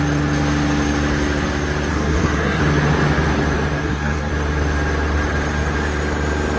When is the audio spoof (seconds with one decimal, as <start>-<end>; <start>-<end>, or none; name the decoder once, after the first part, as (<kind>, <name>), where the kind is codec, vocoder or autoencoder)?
1.9-2.6 (codec, SNAC); 3.8-4.3